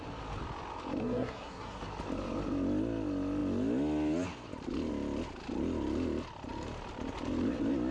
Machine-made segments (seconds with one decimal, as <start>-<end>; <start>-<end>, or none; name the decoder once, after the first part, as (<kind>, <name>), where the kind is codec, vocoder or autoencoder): 1.0-1.8 (codec, SNAC)